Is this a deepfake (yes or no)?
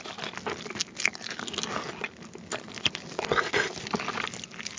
no